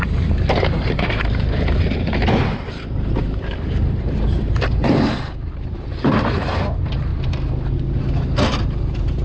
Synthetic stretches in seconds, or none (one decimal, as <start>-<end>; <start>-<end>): 0.0-4.8; 5.5-7.1; 8.0-9.2